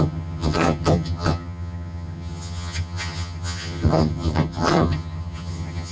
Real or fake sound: fake